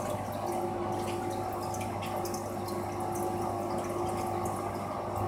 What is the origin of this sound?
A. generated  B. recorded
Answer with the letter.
B